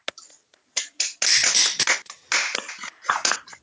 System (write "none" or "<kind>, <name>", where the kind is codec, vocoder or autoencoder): none